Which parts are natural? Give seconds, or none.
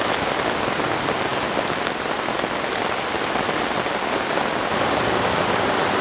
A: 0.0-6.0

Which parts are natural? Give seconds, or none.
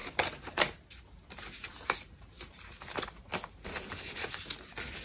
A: 3.3-5.0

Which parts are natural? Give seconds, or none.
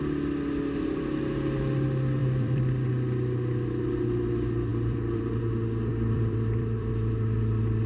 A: 0.0-2.2; 2.9-4.7; 5.4-5.9; 6.9-7.9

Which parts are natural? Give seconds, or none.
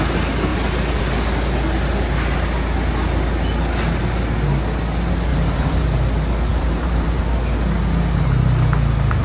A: 0.0-5.3; 5.8-6.5; 7.2-9.2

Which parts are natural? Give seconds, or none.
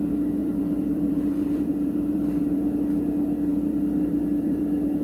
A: 0.0-0.4; 3.0-3.5; 4.6-5.0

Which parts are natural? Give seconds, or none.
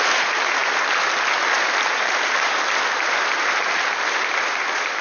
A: 0.0-5.0